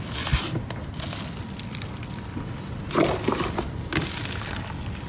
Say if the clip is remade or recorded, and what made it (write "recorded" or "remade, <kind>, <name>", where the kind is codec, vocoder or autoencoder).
recorded